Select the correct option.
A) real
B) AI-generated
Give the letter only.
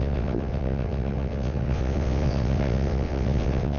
B